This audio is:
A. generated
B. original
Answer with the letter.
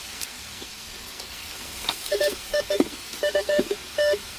A